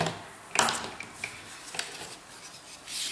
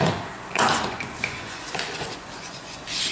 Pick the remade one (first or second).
second